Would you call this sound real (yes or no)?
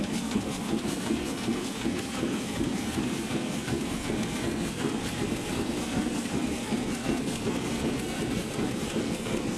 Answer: no